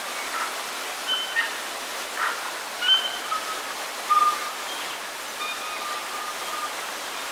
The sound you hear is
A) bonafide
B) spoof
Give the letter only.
A